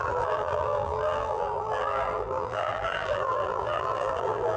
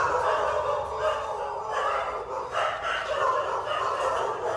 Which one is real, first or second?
second